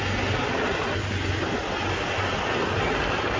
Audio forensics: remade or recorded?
recorded